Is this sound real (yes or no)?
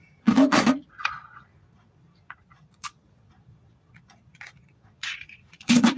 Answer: no